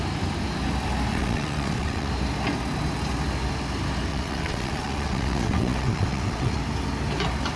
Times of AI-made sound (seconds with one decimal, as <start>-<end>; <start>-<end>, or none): 1.1-2.1; 4.1-6.6